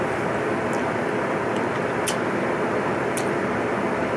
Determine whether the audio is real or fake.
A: real